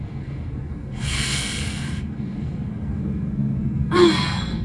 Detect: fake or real fake